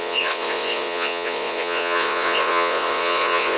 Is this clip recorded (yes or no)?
no